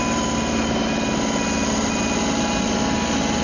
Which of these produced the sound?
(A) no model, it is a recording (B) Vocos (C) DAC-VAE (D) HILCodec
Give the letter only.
A